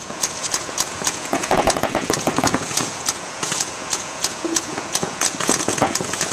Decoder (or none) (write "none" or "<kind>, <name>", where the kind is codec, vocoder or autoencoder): vocoder, Vocos